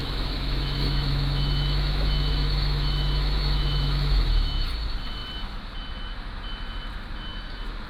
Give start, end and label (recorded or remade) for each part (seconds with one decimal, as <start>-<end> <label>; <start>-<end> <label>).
0.0-4.6 remade; 4.6-7.9 recorded